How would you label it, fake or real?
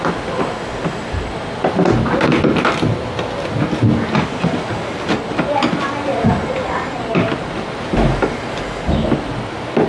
real